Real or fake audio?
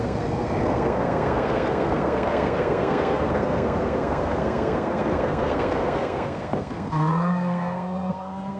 fake